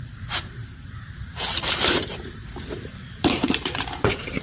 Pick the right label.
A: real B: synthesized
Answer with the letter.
B